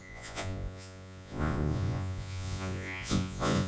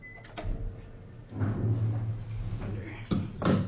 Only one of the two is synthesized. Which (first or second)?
first